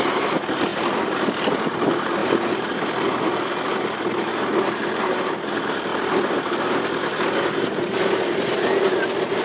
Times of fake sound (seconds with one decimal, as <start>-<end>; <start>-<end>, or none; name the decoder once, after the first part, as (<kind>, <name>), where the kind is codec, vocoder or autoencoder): 0.7-1.5 (vocoder, BigVGAN v2); 2.2-5.1; 5.9-6.6